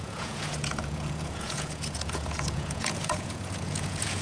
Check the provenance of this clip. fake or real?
fake